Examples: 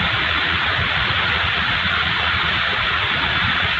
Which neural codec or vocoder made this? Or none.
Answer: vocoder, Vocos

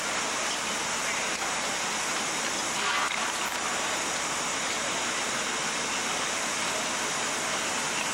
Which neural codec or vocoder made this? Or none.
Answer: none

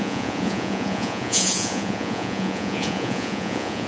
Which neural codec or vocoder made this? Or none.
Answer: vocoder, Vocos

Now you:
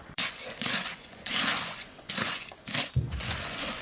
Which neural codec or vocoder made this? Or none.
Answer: vocoder, Vocos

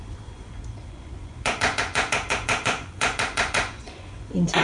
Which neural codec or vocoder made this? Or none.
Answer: vocoder, Vocos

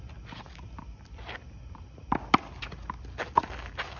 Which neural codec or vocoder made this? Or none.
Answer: none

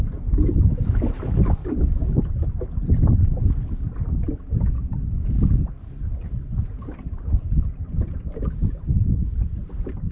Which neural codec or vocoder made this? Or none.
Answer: none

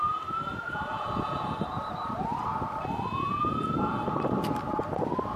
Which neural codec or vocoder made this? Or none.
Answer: none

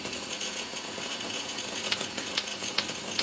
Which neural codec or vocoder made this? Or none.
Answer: vocoder, Vocos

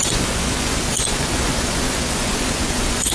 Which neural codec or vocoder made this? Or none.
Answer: vocoder, Vocos